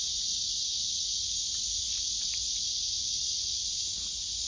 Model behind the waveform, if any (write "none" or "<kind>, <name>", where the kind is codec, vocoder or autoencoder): none